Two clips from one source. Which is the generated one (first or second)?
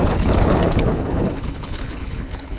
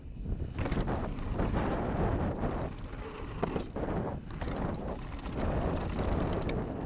first